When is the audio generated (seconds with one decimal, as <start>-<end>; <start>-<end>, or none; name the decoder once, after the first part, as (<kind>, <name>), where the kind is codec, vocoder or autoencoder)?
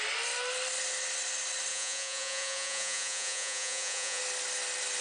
1.7-4.2 (vocoder, Vocos)